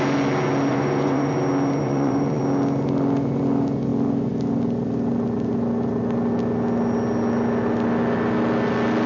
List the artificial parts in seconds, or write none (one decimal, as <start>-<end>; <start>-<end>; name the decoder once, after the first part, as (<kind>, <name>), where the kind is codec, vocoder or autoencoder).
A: 0.7-1.3 (vocoder, Vocos); 1.8-2.4